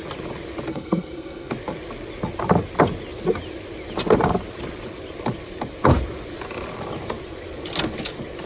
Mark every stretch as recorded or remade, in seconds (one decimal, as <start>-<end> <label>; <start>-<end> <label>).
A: 0.0-0.7 recorded; 0.7-1.5 remade; 1.5-8.5 recorded